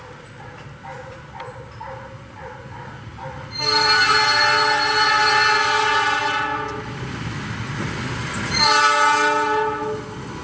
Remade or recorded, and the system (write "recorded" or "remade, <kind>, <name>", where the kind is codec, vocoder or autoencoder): recorded